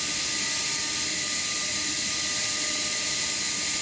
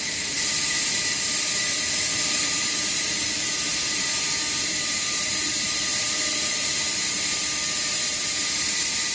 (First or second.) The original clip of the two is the first